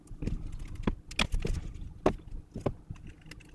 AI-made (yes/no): no